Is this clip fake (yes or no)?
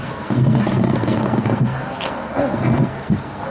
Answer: yes